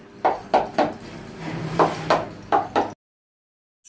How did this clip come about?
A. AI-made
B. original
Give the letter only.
B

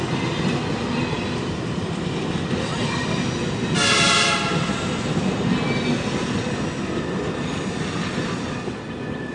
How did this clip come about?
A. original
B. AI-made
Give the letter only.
A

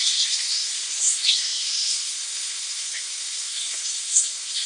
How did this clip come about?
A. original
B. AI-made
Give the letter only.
B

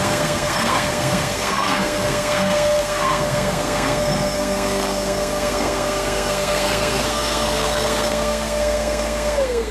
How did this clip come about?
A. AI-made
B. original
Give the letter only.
A